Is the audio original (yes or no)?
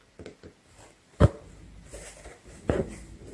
yes